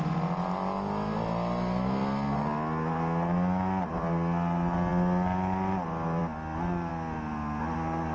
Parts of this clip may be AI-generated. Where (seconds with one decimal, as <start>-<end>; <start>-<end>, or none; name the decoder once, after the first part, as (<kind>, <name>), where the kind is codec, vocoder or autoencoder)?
none

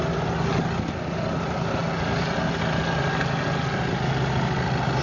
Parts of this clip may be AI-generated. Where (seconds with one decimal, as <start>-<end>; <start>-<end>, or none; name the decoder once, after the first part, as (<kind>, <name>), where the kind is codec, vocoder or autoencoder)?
none

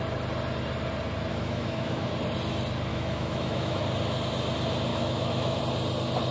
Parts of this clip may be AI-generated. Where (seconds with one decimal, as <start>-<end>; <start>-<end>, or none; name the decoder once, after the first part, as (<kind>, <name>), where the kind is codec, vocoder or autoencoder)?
1.3-2.1 (autoencoder, DAC-VAE); 2.9-3.8; 4.9-5.6

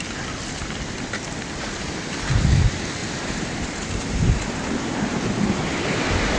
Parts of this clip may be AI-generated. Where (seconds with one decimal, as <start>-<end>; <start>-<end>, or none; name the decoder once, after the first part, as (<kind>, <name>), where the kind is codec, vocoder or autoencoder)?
3.0-5.0 (vocoder, BigVGAN v2)

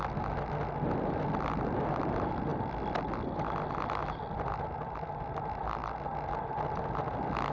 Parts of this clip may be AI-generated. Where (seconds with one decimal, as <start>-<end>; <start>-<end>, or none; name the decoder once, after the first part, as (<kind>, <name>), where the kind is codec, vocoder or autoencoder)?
none